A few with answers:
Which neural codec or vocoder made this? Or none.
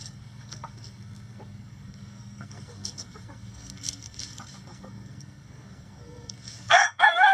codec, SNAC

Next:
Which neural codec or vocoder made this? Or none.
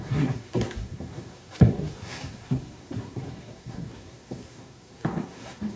codec, SNAC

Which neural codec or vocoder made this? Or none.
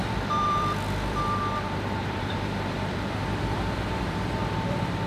vocoder, BigVGAN v2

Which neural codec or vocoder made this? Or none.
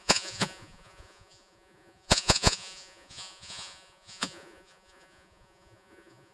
vocoder, Vocos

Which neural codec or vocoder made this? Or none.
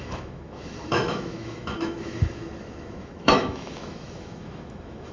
autoencoder, DAC-VAE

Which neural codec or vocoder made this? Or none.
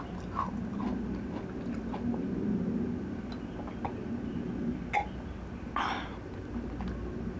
none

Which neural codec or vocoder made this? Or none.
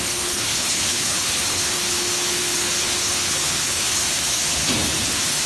codec, HILCodec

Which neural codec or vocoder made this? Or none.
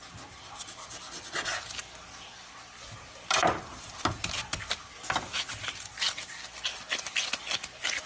none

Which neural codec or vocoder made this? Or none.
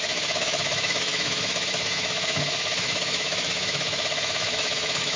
autoencoder, DAC-VAE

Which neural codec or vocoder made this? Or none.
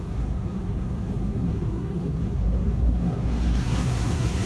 codec, SNAC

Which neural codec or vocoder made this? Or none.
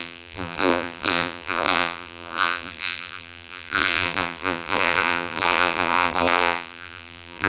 vocoder, BigVGAN v2